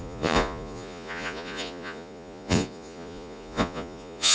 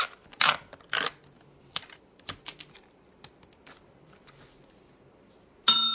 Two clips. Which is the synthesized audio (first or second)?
first